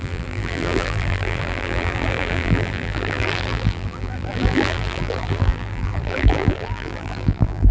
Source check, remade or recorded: remade